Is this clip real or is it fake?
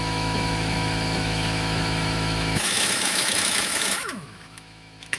fake